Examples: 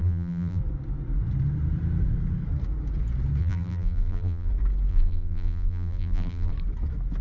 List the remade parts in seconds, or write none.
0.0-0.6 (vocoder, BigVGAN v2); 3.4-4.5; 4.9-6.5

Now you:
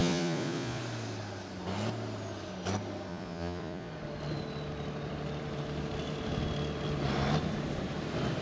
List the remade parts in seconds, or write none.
0.0-0.8 (vocoder, Vocos); 3.1-3.9